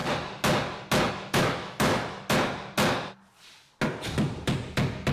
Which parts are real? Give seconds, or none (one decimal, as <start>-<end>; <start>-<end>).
0.0-1.1; 1.9-5.1